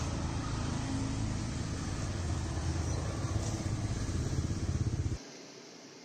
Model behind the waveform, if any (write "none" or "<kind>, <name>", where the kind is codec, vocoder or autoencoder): none